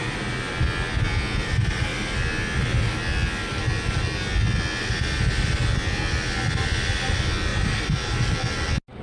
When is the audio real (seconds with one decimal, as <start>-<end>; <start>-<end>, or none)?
0.0-7.5; 8.1-9.0